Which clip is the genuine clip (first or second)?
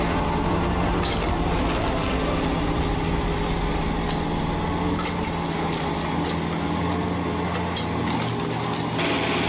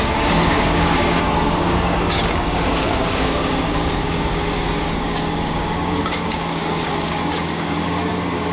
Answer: first